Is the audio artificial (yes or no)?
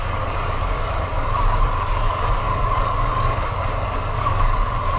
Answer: yes